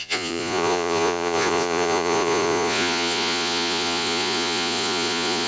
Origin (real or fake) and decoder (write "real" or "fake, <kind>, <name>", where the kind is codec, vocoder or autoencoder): fake, vocoder, Vocos